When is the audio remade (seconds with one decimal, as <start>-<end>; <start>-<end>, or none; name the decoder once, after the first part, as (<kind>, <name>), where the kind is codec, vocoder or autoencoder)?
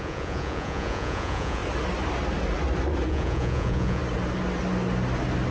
0.0-1.6 (vocoder, Vocos); 3.1-4.0